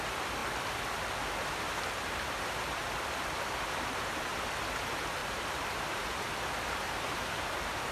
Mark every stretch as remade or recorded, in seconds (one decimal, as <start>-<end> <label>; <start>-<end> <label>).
0.0-0.4 remade; 0.4-1.5 recorded; 1.5-2.8 remade; 2.8-3.3 recorded; 3.3-4.3 remade; 4.3-4.8 recorded; 4.8-7.9 remade